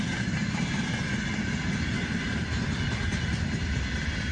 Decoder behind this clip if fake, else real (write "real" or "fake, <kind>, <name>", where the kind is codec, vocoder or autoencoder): real